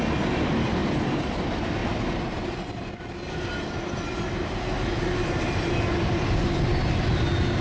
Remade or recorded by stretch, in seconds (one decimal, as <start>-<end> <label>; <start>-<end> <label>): 0.0-7.6 recorded